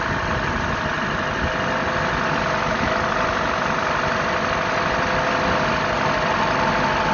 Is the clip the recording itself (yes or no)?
yes